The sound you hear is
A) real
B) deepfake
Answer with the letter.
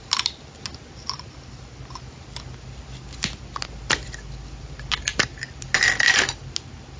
A